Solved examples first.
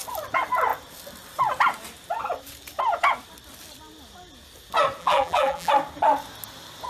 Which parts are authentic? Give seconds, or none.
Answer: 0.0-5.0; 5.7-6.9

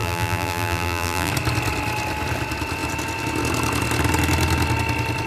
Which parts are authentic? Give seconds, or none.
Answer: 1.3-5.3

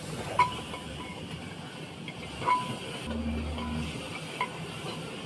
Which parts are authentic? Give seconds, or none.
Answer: 1.1-4.0